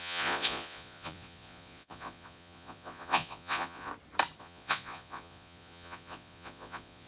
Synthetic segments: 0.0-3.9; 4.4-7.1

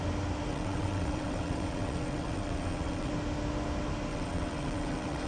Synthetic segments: 0.5-3.1; 4.1-5.3

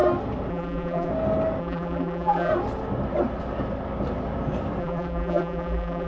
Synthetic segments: 0.5-1.1; 1.6-2.5; 4.8-6.1

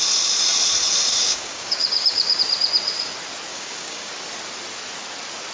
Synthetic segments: 1.1-2.4; 3.5-4.1

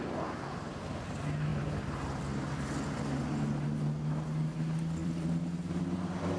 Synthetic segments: 1.5-2.2; 5.0-6.4

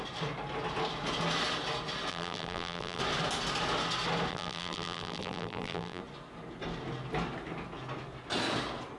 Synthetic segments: 2.1-3.0; 4.3-6.0

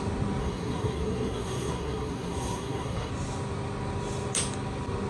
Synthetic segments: 0.4-3.1

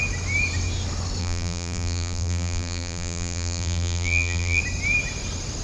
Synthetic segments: 1.2-4.6